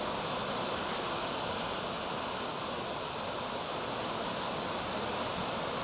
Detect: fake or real real